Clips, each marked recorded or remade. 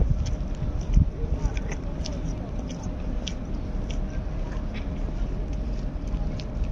recorded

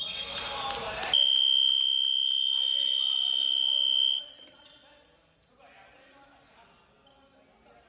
recorded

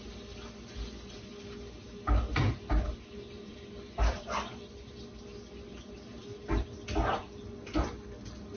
recorded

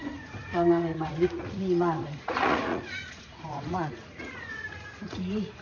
remade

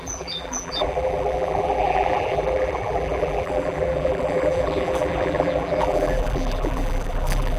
remade